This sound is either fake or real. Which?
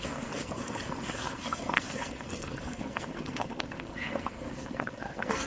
fake